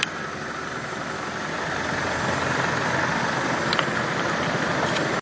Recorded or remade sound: recorded